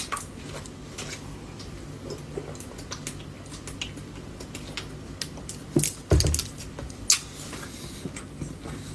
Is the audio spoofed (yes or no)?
no